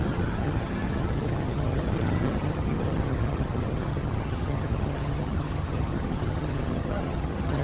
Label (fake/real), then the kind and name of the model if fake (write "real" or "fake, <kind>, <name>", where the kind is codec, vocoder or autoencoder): fake, vocoder, HiFi-GAN